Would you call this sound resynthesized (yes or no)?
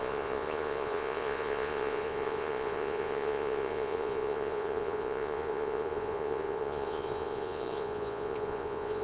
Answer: yes